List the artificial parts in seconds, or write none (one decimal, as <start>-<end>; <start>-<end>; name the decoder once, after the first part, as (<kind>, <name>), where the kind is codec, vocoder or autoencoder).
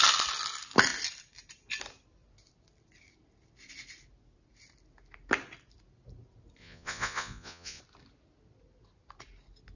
6.6-7.8 (vocoder, Vocos)